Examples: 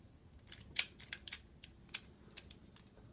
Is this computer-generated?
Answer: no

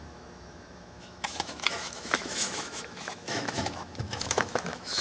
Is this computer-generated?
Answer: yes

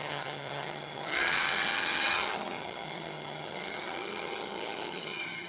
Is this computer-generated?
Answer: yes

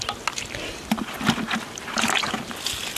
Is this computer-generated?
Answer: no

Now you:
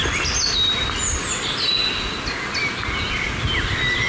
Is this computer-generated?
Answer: no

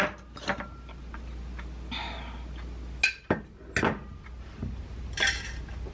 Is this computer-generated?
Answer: no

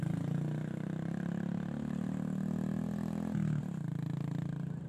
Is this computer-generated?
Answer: no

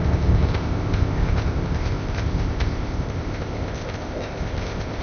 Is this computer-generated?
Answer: yes